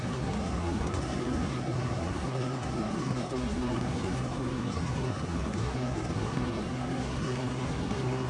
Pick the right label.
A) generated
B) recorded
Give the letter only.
A